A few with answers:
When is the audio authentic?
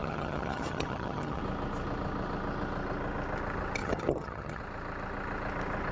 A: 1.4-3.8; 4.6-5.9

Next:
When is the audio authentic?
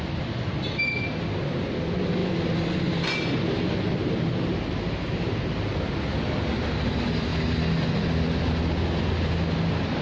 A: 0.0-10.0